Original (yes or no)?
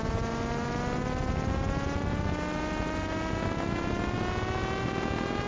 yes